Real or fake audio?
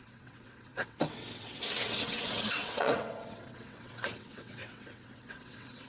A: fake